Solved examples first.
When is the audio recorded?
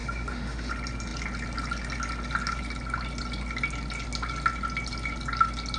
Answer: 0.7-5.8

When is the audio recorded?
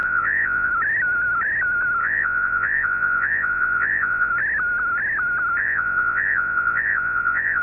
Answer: 0.7-2.0; 4.3-5.6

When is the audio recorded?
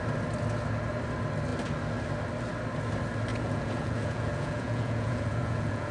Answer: 0.0-3.3